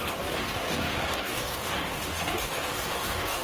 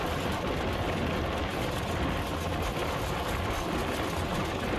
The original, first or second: second